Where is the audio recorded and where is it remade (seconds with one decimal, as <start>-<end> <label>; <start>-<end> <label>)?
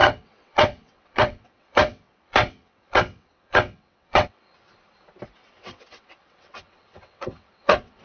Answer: 0.0-4.7 remade; 4.7-5.4 recorded; 5.4-8.0 remade